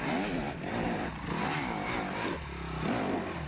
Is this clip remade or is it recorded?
recorded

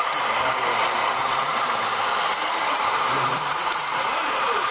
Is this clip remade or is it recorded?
recorded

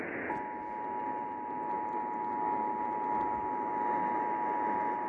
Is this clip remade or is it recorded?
recorded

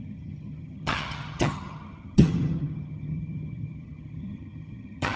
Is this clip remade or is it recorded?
remade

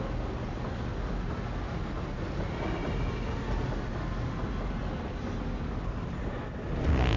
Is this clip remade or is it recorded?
recorded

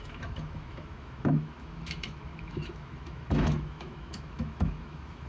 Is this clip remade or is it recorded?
remade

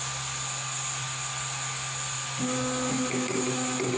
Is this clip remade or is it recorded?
recorded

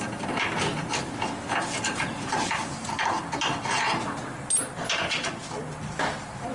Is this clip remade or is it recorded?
recorded